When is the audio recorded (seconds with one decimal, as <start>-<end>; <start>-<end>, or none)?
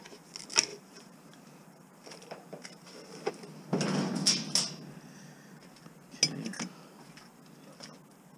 0.0-0.7; 3.3-8.4